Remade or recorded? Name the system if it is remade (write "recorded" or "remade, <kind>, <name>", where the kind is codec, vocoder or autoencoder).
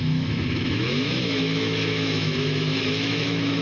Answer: remade, autoencoder, DAC-VAE